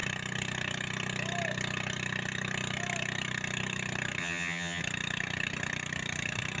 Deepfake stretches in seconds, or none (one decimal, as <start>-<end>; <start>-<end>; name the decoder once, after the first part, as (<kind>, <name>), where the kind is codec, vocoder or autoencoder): 4.2-4.8 (vocoder, HiFi-GAN)